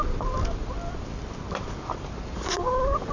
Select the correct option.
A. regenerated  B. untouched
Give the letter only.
B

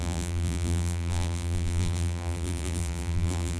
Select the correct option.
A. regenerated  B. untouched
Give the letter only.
A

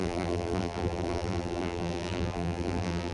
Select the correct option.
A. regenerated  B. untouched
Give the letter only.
A